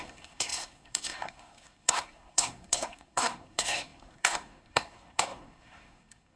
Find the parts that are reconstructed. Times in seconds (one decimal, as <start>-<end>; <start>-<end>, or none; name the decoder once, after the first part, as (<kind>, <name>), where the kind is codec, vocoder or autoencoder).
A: 0.0-6.4 (codec, SNAC)